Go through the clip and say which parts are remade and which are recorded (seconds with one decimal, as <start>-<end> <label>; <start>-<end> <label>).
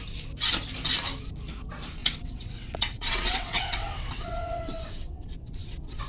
0.0-2.0 recorded; 2.0-6.1 remade